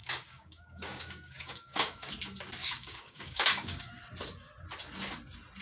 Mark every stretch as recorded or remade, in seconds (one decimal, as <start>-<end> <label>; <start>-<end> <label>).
0.0-2.1 remade; 2.1-2.6 recorded; 2.6-4.0 remade; 4.0-5.6 recorded